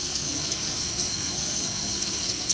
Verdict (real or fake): fake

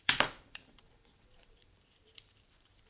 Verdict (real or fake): fake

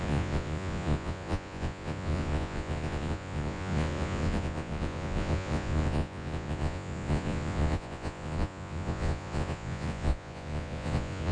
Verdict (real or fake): fake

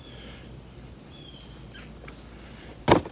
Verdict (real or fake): real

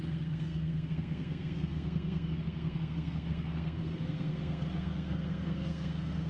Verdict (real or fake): fake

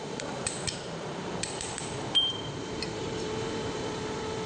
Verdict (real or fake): fake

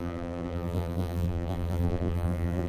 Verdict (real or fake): fake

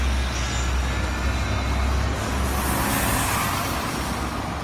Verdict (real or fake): real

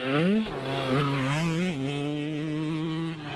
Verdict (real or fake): real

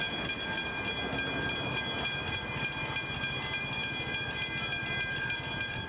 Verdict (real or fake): real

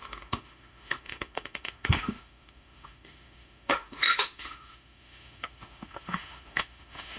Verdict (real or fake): fake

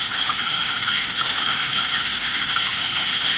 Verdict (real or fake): fake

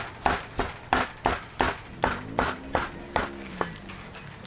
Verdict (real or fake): real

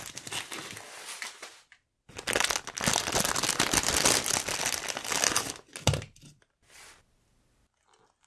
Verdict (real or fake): real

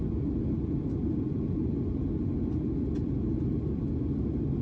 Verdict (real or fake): real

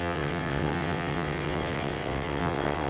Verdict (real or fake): fake